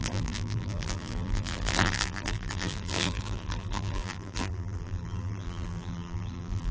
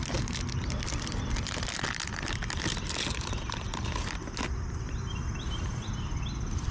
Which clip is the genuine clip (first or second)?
second